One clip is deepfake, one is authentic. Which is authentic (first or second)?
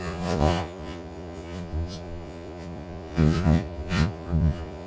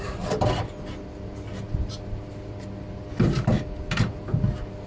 second